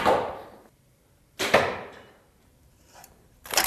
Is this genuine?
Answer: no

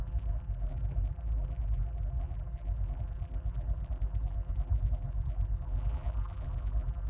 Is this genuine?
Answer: no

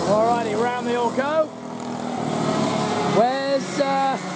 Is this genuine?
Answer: yes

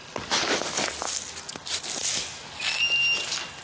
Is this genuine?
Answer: yes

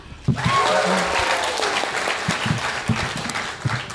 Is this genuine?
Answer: yes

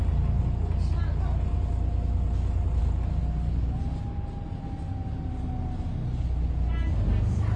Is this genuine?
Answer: yes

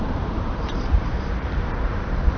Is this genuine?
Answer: no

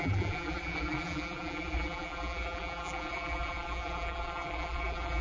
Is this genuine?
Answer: no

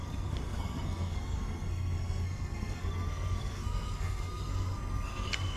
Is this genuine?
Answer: no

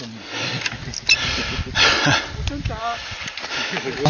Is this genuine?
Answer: yes